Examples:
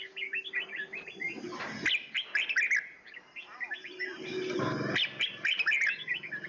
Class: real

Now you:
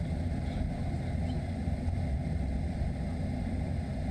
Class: real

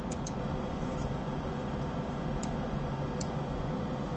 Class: fake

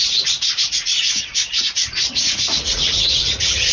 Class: fake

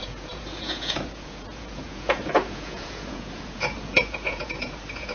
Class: fake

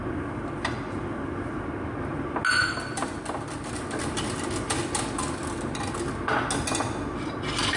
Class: real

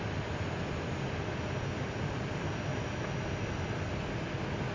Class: real